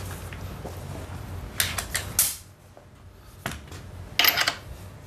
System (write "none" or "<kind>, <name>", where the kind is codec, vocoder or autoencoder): none